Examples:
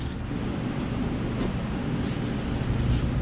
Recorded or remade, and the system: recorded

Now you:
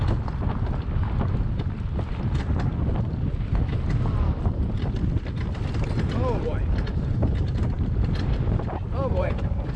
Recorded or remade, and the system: recorded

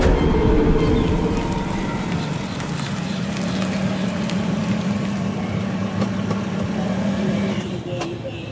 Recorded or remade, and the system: recorded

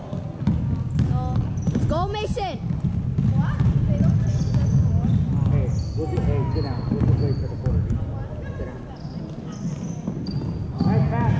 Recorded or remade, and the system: recorded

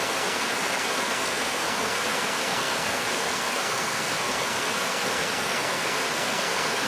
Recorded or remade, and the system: remade, codec, SNAC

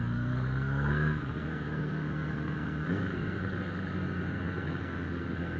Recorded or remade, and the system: remade, codec, SNAC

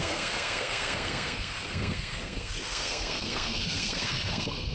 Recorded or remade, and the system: remade, codec, SNAC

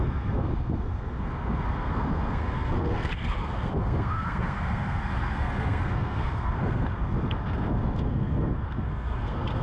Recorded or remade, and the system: remade, codec, SNAC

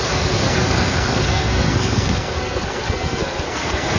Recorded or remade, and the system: remade, codec, SNAC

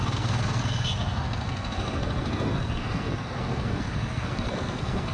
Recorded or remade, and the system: remade, codec, SNAC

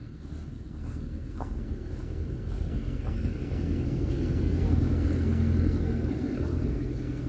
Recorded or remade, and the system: remade, codec, SNAC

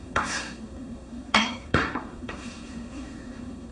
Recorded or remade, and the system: remade, codec, SNAC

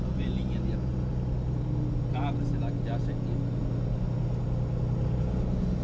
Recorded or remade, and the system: recorded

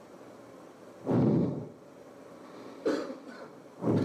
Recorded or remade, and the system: recorded